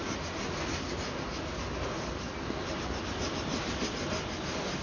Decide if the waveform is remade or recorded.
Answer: recorded